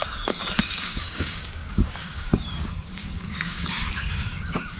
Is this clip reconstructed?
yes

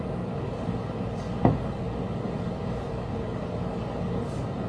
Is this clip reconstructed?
yes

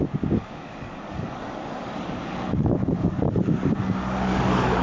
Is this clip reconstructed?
yes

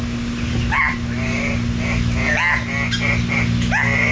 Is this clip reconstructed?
no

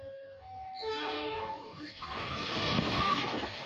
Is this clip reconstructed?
yes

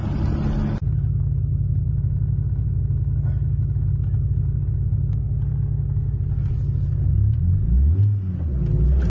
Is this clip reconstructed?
no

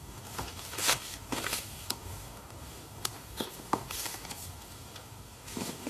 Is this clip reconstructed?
yes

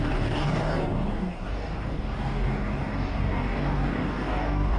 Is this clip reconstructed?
yes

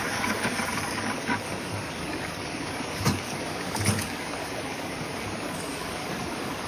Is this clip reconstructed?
yes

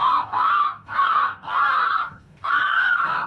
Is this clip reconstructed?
yes